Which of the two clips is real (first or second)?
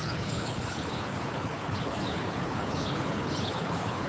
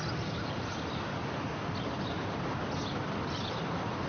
second